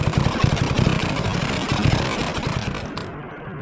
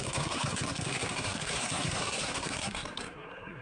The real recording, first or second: first